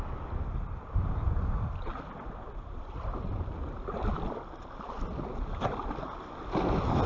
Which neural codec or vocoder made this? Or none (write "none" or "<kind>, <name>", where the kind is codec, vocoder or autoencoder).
none